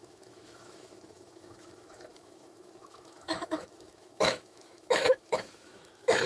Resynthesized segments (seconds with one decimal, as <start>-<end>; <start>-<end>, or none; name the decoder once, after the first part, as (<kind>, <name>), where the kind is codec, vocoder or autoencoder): 0.0-6.3 (autoencoder, DAC-VAE)